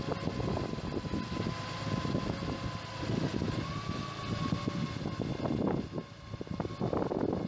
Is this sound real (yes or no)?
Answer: yes